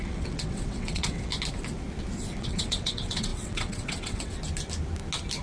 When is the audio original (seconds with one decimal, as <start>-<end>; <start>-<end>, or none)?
1.3-2.4; 4.4-5.4

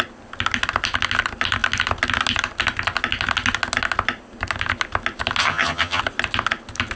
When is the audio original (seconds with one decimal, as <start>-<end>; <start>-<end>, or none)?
0.0-5.4; 6.0-7.0

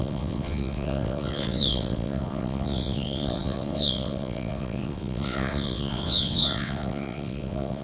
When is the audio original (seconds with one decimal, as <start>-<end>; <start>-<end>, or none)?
none

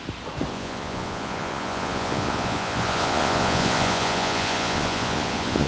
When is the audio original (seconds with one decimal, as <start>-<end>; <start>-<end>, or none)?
0.0-0.5

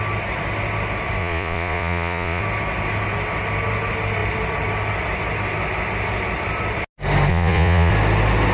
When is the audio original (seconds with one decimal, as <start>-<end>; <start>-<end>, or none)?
0.0-1.2; 2.4-7.3; 7.9-8.5

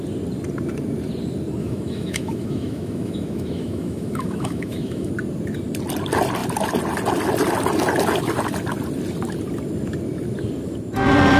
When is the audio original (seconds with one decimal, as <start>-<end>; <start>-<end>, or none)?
0.0-1.6; 5.1-11.4

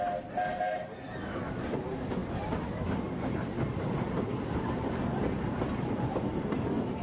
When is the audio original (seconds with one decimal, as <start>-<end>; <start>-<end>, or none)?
0.0-7.0